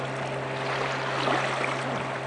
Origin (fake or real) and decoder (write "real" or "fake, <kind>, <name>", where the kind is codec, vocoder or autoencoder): real